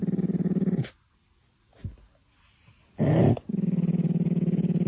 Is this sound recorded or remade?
recorded